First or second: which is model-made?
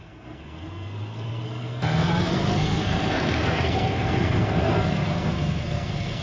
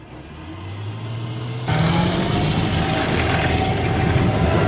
first